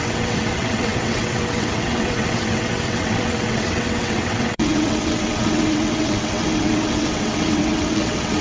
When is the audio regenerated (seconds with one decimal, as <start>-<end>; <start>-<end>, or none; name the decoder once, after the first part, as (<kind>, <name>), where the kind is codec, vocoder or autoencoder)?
0.0-8.4 (vocoder, WaveNeXt)